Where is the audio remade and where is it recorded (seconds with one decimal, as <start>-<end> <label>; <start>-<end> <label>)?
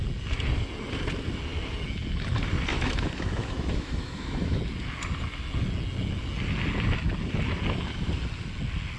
0.0-2.7 recorded; 2.7-4.6 remade; 4.6-9.0 recorded